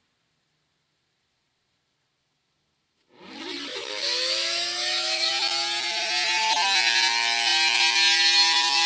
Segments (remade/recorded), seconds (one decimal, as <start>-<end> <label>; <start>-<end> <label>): 0.0-3.7 recorded; 3.7-5.3 remade; 5.3-8.9 recorded